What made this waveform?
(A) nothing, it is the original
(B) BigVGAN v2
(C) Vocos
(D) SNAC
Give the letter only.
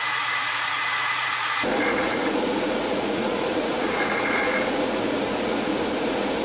C